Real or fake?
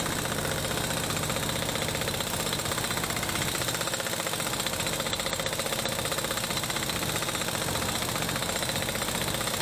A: real